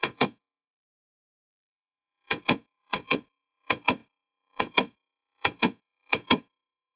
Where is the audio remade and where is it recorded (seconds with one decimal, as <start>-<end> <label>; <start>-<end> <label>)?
0.0-7.0 remade